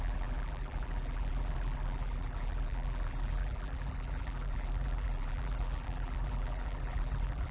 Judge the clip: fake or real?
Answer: fake